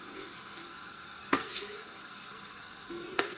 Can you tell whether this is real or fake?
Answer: fake